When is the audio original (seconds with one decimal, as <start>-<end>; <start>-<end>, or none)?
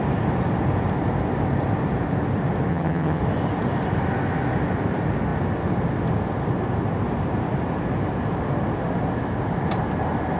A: 0.0-2.7; 3.2-10.4